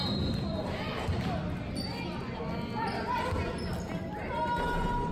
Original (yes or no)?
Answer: yes